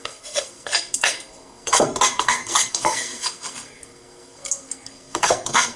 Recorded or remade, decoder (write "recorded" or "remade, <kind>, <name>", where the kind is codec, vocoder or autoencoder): remade, codec, SNAC